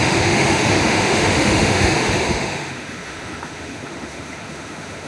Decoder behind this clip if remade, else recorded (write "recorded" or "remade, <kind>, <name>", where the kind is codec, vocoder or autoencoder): remade, autoencoder, DAC-VAE